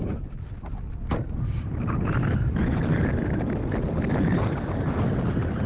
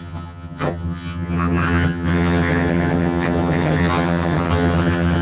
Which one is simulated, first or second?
second